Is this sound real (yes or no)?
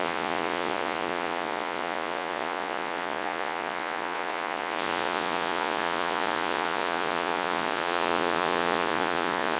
no